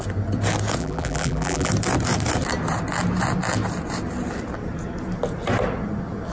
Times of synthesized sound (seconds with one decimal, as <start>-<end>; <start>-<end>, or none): 0.8-1.7

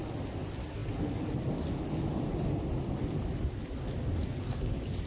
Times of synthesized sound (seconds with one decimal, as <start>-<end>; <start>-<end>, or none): none

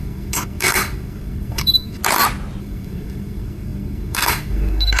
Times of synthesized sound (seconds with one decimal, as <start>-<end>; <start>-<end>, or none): 0.0-2.0; 2.6-5.0

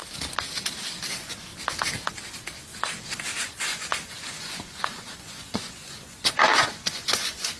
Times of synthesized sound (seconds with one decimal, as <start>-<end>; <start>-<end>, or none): 1.1-1.5; 2.3-2.7; 3.4-7.6